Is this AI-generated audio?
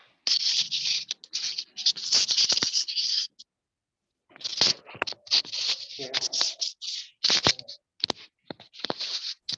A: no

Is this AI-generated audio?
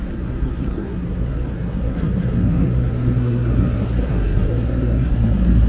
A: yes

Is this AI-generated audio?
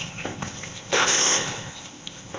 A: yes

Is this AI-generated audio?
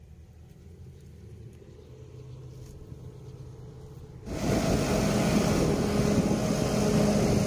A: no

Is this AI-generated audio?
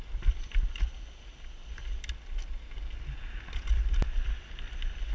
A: no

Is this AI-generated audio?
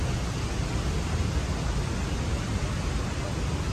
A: no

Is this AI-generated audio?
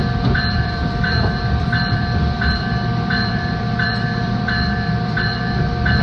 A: yes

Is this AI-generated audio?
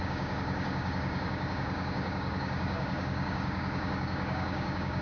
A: yes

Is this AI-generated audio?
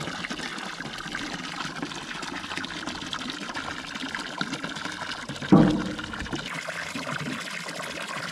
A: no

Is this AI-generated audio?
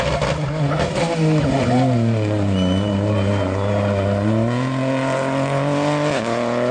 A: no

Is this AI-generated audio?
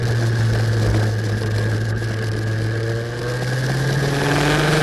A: no